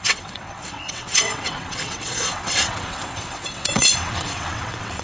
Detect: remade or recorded remade